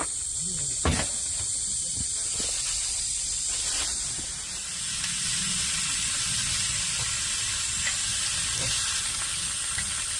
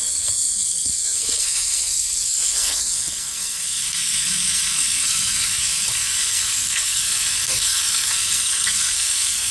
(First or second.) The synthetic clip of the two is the second